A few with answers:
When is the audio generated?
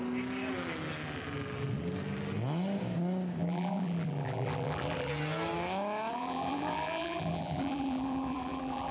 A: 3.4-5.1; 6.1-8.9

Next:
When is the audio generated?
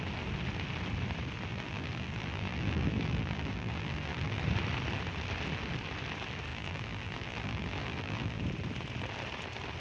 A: 1.5-4.4; 6.5-8.4